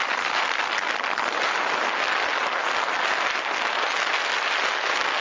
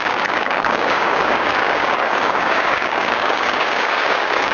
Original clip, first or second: first